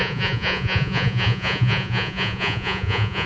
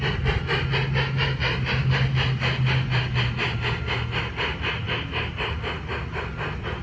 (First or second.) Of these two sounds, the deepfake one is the first